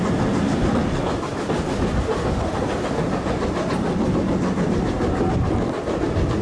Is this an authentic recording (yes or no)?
yes